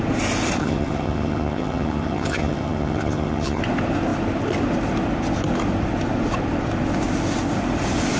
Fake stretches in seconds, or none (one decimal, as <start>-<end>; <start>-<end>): 0.6-3.6